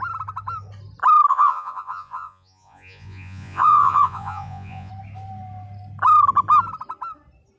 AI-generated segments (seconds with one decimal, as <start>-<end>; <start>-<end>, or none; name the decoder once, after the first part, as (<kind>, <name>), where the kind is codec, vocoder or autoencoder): 1.3-4.9 (vocoder, Vocos)